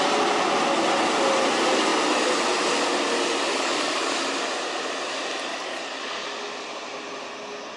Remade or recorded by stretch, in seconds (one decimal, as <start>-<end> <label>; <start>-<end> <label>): 0.0-3.5 recorded; 3.5-4.2 remade; 4.2-5.5 recorded; 5.5-6.0 remade; 6.0-7.8 recorded